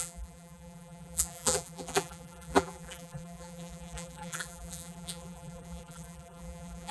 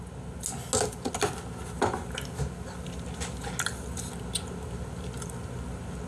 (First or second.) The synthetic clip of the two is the first